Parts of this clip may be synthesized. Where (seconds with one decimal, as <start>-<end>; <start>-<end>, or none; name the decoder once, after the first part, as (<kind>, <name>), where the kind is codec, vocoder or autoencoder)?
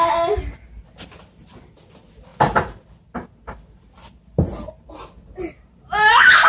none